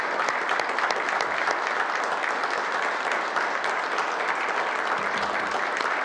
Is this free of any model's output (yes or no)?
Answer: yes